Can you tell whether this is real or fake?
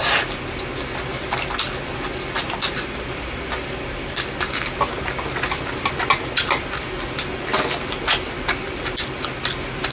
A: real